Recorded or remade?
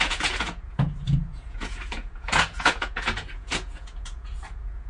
remade